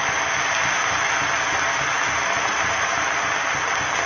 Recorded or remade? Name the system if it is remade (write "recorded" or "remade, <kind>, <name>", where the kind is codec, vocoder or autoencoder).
recorded